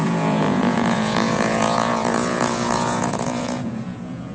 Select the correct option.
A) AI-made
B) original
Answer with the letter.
A